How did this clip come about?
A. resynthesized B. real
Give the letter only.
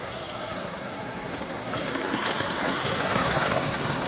A